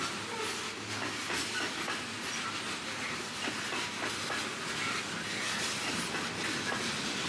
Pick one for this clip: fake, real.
real